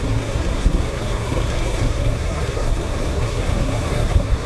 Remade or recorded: remade